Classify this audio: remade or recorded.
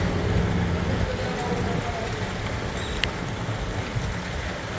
recorded